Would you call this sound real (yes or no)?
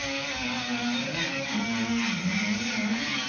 no